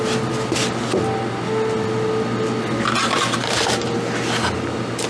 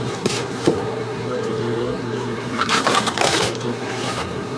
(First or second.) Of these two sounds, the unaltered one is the first